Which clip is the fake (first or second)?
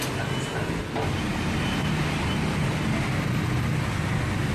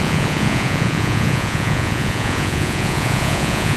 second